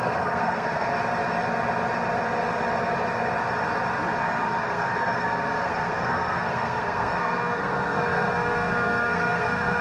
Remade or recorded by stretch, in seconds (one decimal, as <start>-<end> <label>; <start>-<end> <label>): 0.0-0.9 remade; 0.9-4.2 recorded; 4.2-9.8 remade

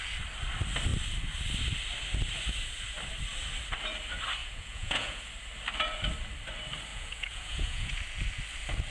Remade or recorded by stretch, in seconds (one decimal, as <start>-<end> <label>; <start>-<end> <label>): 0.0-4.4 recorded; 4.4-5.2 remade; 5.2-6.9 recorded; 6.9-7.9 remade; 7.9-8.9 recorded